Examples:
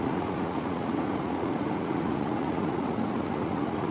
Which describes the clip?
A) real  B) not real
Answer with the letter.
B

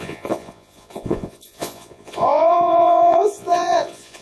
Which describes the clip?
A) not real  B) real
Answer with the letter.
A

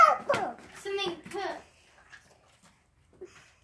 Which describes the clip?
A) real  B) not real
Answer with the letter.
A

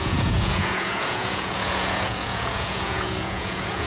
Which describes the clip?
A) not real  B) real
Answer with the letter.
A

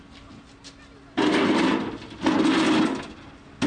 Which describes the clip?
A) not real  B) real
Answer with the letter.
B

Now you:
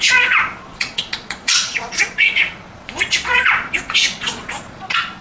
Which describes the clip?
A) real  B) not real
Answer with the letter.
B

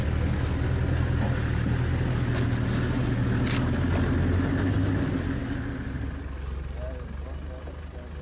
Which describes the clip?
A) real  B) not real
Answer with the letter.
A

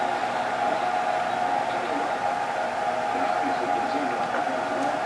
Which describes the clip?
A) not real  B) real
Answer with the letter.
B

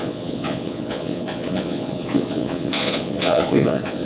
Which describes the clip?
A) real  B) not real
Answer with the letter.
B